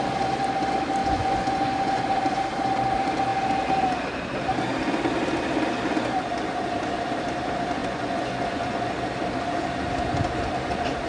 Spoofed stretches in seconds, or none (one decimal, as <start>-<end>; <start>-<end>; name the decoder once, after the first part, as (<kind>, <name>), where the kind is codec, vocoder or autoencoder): 1.0-2.0 (vocoder, Vocos); 7.8-8.9